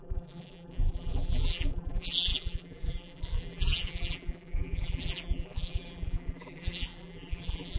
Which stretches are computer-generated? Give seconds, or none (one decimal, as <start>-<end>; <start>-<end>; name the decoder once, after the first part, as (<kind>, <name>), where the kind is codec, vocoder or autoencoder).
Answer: 0.0-7.8 (vocoder, BigVGAN v2)